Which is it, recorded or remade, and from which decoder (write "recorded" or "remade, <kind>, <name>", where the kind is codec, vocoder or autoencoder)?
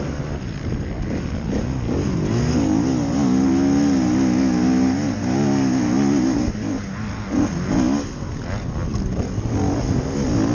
recorded